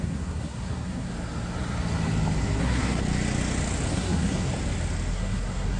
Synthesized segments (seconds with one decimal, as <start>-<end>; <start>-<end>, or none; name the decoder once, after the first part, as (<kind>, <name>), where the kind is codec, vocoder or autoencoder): 0.0-1.1 (codec, SNAC); 2.6-3.0; 3.9-4.5; 5.1-5.8